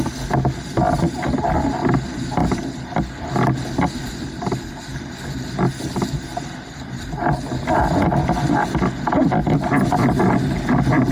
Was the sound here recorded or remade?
recorded